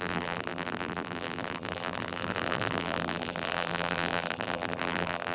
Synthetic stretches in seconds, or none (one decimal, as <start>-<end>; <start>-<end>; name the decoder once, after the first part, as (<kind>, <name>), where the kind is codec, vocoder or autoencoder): 0.0-5.3 (vocoder, BigVGAN v2)